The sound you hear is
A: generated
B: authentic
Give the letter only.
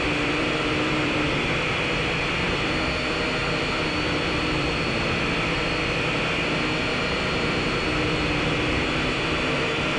A